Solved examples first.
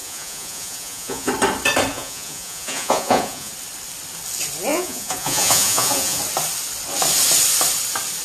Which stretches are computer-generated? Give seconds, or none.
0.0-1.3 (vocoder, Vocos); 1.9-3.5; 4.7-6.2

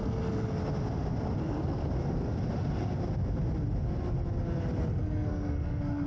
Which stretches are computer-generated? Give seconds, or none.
0.0-0.6 (codec, SNAC); 1.4-1.8; 4.9-6.1

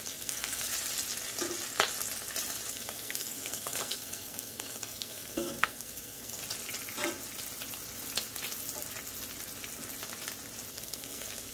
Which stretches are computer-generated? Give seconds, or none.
0.0-0.7 (codec, SNAC); 2.7-6.4; 10.7-11.5

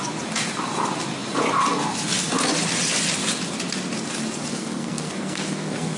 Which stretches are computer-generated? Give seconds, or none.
4.5-6.0 (codec, SNAC)

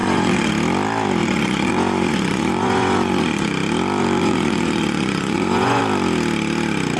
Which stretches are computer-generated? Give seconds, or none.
0.0-0.5 (vocoder, Vocos); 1.2-3.5; 4.0-5.8

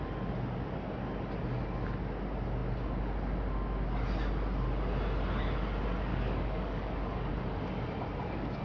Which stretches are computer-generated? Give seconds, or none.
6.1-7.3 (codec, DAC)

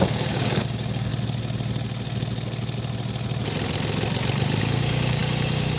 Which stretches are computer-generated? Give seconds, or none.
0.0-1.1 (codec, DAC); 4.6-5.8